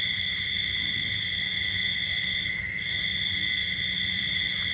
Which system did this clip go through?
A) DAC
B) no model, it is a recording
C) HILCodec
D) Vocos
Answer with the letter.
B